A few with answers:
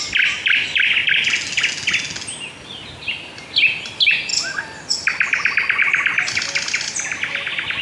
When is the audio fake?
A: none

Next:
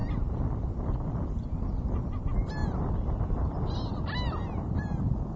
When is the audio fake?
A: none

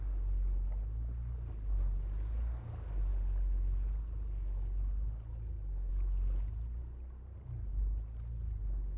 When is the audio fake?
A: none

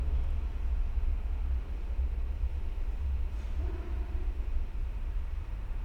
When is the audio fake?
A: 2.5-4.3 (vocoder, BigVGAN v2); 4.8-5.8